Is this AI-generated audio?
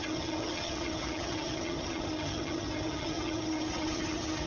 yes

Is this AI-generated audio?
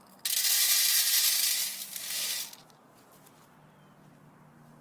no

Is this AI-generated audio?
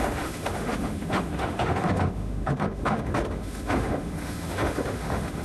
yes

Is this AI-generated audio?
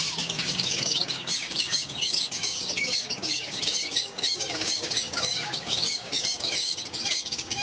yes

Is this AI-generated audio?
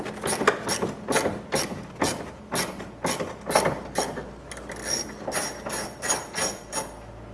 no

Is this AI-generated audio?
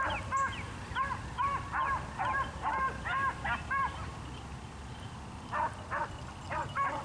no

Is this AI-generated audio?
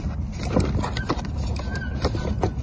yes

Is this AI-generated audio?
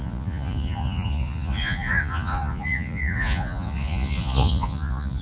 yes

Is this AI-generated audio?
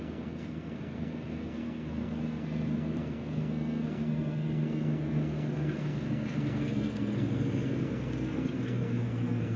yes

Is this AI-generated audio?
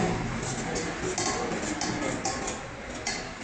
no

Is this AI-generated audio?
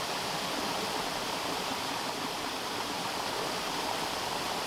no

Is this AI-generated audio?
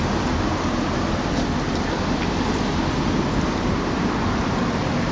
yes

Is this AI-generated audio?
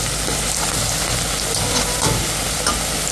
no